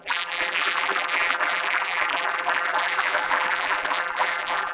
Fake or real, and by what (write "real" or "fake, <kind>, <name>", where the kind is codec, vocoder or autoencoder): fake, vocoder, BigVGAN v2